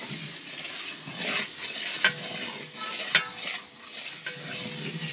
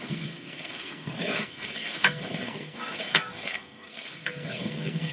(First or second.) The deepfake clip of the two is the second